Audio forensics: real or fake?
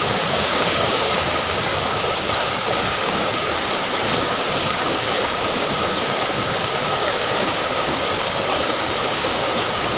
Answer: fake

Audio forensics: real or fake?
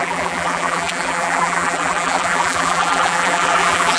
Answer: fake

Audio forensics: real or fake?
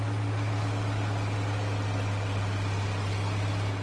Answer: real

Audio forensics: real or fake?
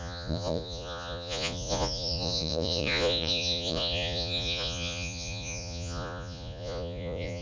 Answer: fake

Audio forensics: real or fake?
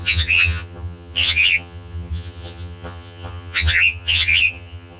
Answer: fake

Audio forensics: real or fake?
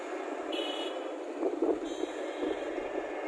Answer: real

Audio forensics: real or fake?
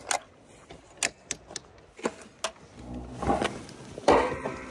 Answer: real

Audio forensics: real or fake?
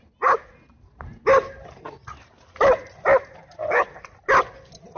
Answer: real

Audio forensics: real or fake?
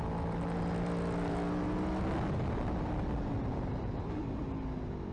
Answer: real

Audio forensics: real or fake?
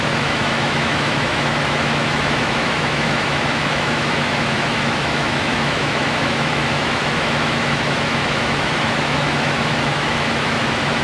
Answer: fake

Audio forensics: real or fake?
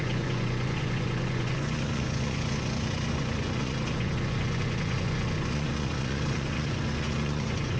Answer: fake